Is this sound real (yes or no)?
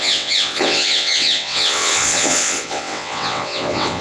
no